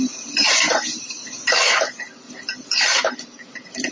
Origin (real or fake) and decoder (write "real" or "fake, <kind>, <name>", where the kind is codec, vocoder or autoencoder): real